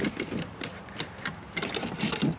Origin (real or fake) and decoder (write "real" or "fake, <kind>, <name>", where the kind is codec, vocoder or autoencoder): real